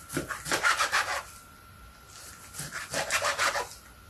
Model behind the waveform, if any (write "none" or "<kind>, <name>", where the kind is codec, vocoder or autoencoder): none